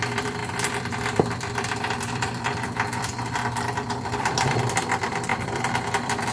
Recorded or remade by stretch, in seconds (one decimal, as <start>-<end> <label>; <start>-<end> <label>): 0.0-6.3 remade